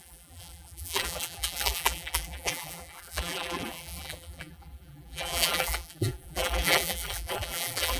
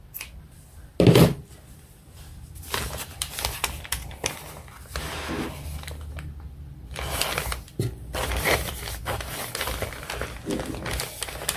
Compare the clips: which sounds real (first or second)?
second